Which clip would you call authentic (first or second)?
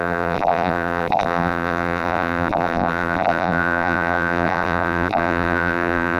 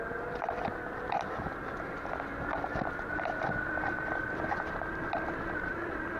second